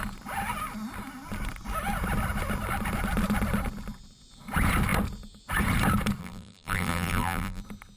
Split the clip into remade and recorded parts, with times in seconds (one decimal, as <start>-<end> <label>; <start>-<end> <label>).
0.0-6.2 recorded; 6.2-7.6 remade; 7.6-8.0 recorded